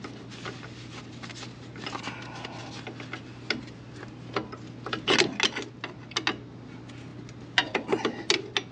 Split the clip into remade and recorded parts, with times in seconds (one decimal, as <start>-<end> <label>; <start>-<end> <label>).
0.0-8.7 recorded